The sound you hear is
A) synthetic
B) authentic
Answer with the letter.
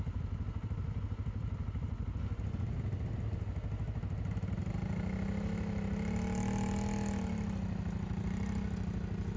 B